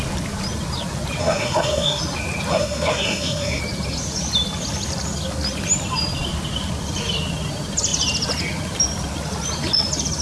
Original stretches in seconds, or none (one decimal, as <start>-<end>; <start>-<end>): 0.0-1.2; 2.0-2.5; 3.6-10.2